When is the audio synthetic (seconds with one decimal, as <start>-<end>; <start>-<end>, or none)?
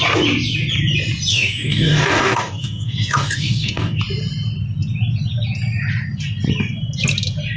1.3-4.0